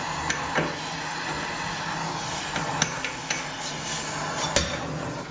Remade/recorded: recorded